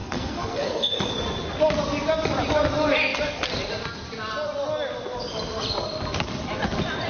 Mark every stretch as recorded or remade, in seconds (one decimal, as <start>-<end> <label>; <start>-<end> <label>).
0.0-1.1 remade; 1.1-7.1 recorded